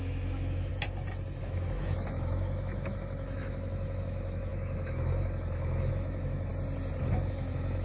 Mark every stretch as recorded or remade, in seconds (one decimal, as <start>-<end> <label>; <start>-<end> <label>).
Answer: 0.0-0.7 remade; 0.7-1.4 recorded; 1.4-6.5 remade; 6.5-7.0 recorded; 7.0-7.8 remade